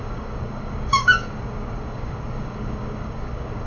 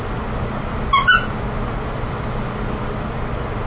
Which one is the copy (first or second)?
first